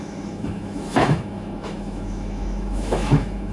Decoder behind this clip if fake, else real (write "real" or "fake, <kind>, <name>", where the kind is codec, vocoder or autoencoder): fake, autoencoder, DAC-VAE